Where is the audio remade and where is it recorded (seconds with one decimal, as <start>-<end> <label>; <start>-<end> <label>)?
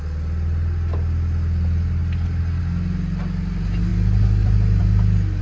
0.0-5.4 recorded